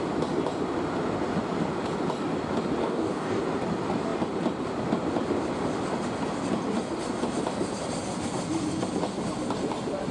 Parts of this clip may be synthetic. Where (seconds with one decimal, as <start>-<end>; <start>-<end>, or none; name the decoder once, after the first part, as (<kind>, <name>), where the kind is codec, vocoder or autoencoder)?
2.8-3.4 (codec, DAC)